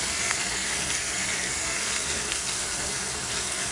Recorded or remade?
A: remade